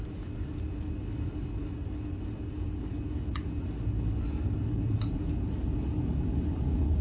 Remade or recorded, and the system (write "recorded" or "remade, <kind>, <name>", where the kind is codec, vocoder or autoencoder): recorded